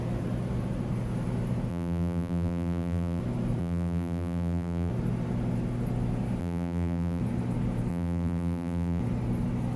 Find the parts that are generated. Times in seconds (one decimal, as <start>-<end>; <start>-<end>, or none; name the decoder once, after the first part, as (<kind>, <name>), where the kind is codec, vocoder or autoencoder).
1.7-3.2 (vocoder, BigVGAN v2); 3.6-4.9; 6.4-7.2; 7.9-9.0